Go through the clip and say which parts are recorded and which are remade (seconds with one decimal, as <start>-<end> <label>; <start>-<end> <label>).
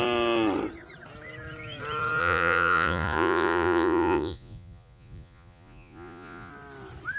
0.0-2.2 recorded; 2.2-6.5 remade; 6.5-7.2 recorded